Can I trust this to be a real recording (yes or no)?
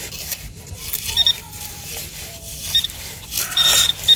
no